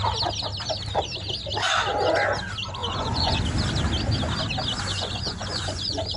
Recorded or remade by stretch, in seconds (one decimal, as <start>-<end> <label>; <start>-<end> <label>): 0.0-2.8 recorded; 2.8-3.4 remade; 3.4-4.9 recorded; 4.9-6.2 remade